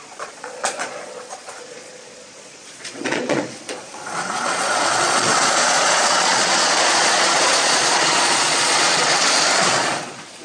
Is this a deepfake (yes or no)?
yes